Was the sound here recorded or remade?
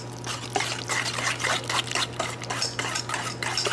recorded